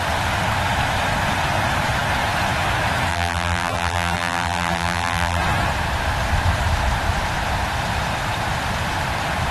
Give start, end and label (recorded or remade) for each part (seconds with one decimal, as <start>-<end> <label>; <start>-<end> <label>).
0.0-3.1 recorded; 3.1-5.4 remade; 5.4-9.5 recorded